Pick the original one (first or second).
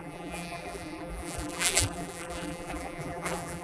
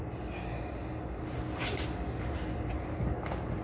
second